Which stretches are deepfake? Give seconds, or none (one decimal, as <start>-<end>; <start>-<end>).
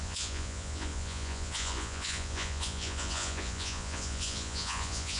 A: 0.0-5.2